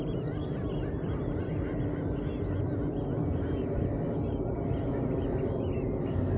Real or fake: real